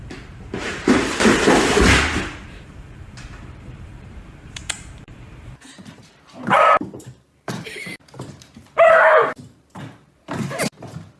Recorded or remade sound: remade